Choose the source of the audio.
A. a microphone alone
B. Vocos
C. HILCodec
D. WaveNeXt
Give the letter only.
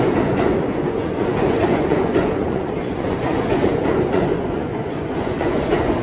B